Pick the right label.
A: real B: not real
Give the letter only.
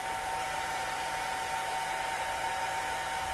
A